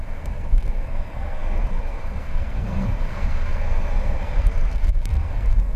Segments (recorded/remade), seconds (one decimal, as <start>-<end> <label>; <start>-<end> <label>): 0.0-5.8 remade